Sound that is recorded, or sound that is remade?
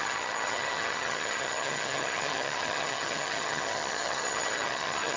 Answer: remade